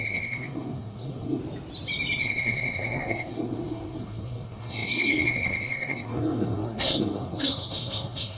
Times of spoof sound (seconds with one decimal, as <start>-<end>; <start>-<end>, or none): 0.0-1.4; 2.2-8.4